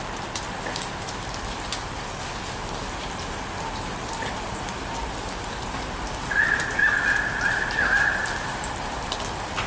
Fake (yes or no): no